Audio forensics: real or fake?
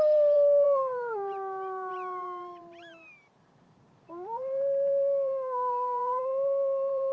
fake